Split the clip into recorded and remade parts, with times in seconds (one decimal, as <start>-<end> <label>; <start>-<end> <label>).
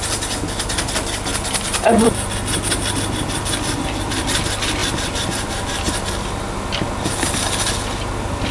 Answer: 0.0-8.5 recorded